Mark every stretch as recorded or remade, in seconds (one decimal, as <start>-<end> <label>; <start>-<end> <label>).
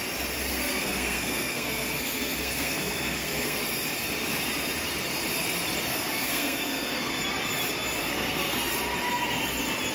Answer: 0.0-0.5 recorded; 0.5-3.6 remade; 3.6-5.9 recorded; 5.9-7.1 remade; 7.1-8.0 recorded; 8.0-8.7 remade; 8.7-9.9 recorded